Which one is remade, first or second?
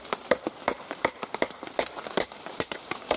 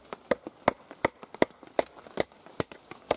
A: first